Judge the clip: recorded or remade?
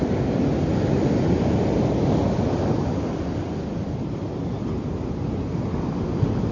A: recorded